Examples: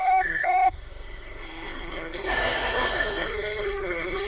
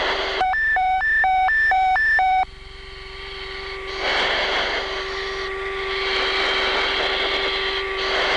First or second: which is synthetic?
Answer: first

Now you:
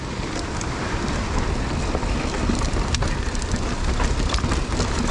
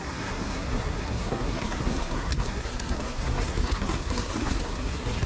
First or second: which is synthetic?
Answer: second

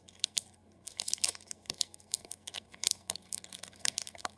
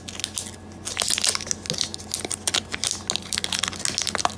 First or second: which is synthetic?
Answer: first